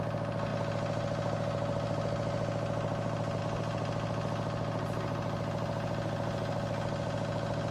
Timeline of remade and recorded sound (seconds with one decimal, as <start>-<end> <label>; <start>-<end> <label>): 0.0-0.5 recorded; 0.5-3.4 remade; 3.4-7.7 recorded

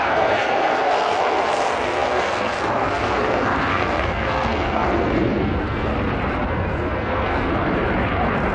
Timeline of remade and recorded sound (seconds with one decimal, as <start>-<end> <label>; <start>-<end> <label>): 0.0-5.9 remade; 5.9-6.5 recorded; 6.5-7.5 remade; 7.5-8.5 recorded

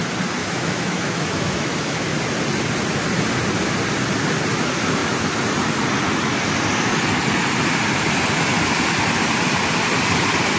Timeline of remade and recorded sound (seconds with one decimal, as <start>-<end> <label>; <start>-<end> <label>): 0.0-0.4 recorded; 0.4-2.1 remade; 2.1-10.6 recorded

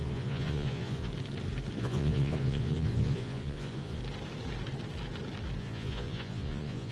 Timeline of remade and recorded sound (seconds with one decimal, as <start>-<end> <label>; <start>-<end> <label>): 0.0-1.1 remade; 1.1-1.8 recorded; 1.8-4.0 remade; 4.0-5.6 recorded; 5.6-6.9 remade

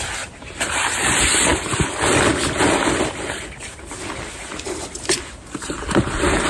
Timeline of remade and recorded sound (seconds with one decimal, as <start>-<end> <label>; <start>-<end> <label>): 0.0-6.5 recorded

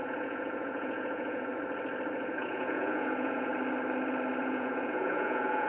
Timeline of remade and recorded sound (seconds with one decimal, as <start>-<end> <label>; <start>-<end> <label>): 0.0-1.5 remade; 1.5-2.3 recorded; 2.3-3.5 remade; 3.5-4.4 recorded; 4.4-5.7 remade

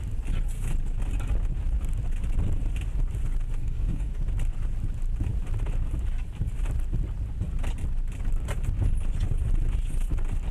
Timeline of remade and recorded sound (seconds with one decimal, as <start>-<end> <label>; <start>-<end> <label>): 0.0-3.6 recorded; 3.6-4.2 remade; 4.2-10.5 recorded